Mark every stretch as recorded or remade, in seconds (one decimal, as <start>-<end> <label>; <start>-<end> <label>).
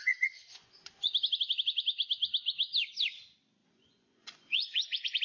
0.0-1.1 remade; 1.1-3.6 recorded; 3.6-5.2 remade